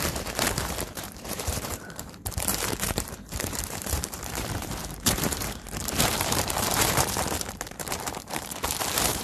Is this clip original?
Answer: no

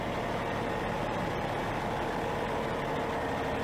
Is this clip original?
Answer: yes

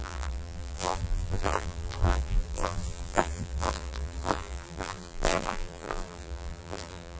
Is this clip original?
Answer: no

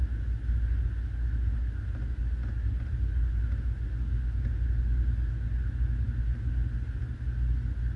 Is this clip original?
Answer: yes